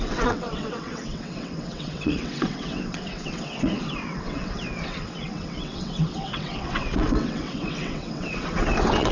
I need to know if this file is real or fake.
fake